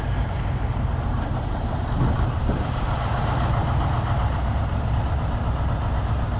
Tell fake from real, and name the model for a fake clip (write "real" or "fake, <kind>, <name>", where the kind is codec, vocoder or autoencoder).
fake, vocoder, BigVGAN v2